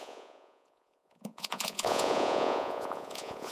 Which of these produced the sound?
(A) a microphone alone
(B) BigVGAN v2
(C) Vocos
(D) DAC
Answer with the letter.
C